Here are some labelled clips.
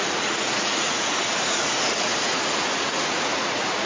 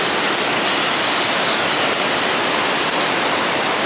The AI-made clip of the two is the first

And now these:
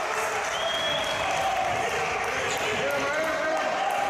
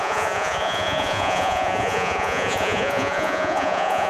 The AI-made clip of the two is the second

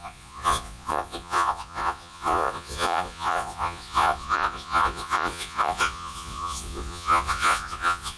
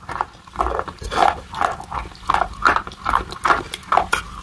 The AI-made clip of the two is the first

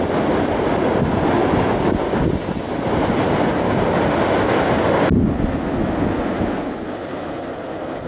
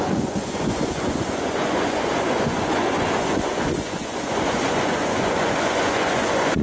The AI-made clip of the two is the second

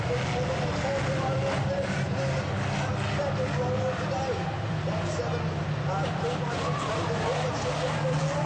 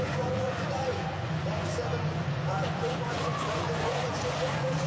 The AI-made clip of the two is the second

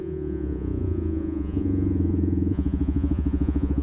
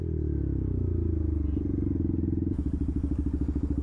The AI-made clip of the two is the first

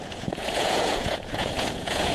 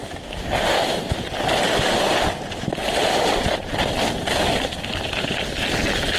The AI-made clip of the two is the first